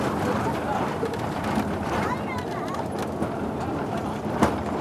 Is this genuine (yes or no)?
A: yes